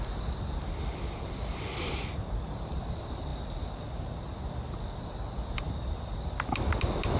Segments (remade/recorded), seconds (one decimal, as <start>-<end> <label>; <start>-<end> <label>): 0.0-7.2 recorded

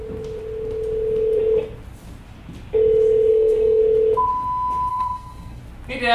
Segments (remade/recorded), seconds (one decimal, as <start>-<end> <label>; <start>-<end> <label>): 0.0-3.3 recorded; 3.3-3.8 remade; 3.8-4.9 recorded; 4.9-5.6 remade; 5.6-6.1 recorded

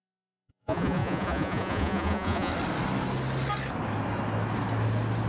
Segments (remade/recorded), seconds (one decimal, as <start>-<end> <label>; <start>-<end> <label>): 0.0-2.5 remade; 2.5-5.3 recorded

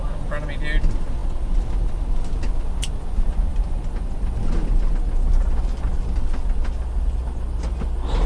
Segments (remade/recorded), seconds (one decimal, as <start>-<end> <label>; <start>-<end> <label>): 0.0-8.3 recorded

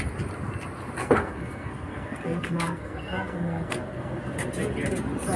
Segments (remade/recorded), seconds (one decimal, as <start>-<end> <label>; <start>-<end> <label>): 0.0-1.0 recorded; 1.0-4.2 remade; 4.2-5.4 recorded